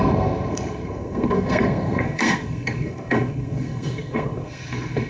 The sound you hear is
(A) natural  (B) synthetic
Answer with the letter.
B